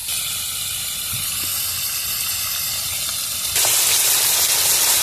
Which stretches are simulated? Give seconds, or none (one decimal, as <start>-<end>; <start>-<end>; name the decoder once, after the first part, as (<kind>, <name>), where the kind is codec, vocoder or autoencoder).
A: none